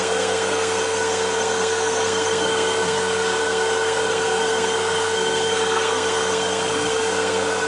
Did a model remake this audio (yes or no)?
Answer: yes